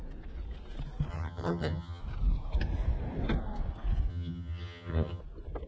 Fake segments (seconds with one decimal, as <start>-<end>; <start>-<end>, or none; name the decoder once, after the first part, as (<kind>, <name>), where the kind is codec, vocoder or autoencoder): 1.1-2.0 (vocoder, HiFi-GAN); 4.1-5.2